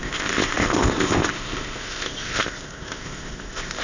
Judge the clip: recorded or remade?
remade